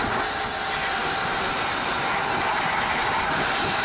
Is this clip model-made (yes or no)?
no